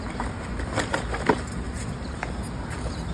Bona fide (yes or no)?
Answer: no